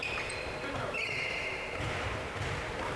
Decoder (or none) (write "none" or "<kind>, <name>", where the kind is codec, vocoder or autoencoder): none